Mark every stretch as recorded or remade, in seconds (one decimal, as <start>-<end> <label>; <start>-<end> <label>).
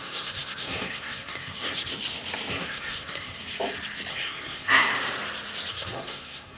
0.0-1.9 remade; 1.9-2.5 recorded; 2.5-3.4 remade; 3.4-4.1 recorded; 4.1-4.9 remade; 4.9-5.7 recorded; 5.7-6.6 remade